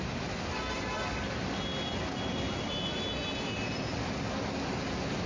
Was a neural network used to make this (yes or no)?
no